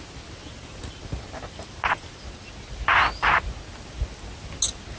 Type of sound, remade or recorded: recorded